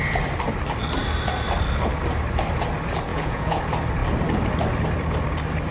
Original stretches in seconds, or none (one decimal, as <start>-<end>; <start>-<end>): 0.0-3.1; 3.6-5.7